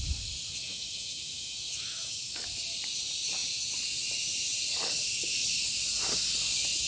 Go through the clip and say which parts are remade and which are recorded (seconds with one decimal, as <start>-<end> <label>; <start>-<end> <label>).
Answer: 0.0-0.6 recorded; 0.6-2.4 remade; 2.4-6.9 recorded